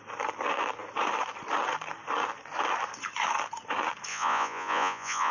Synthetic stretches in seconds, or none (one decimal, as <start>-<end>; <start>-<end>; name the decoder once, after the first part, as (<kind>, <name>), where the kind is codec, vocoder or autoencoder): 4.1-5.3 (vocoder, Vocos)